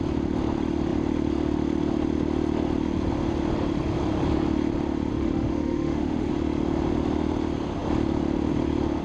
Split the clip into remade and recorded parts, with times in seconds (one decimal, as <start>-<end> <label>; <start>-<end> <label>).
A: 0.0-5.1 recorded; 5.1-6.3 remade; 6.3-9.0 recorded